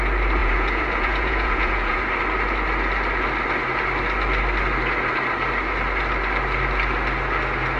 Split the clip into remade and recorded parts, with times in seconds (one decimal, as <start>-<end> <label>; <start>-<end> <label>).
0.0-0.4 recorded; 0.4-2.0 remade; 2.0-7.8 recorded